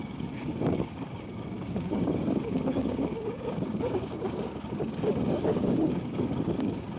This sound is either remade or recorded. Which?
remade